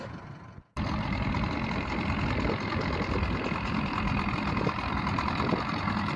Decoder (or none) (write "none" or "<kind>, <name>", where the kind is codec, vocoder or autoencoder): vocoder, BigVGAN v2